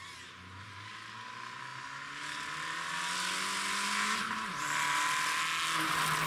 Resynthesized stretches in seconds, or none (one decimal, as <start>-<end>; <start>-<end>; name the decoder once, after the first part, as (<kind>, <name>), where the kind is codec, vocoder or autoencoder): none